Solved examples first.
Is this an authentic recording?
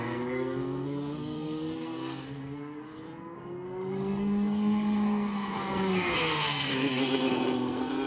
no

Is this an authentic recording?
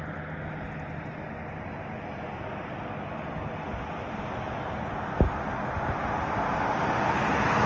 yes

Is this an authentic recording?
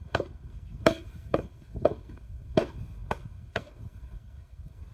no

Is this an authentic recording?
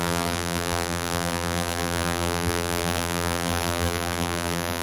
no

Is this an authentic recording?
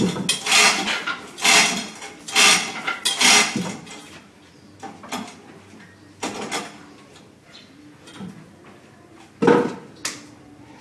yes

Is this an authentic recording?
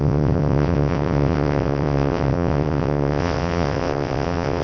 no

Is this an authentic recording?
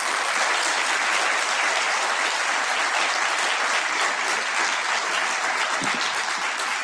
yes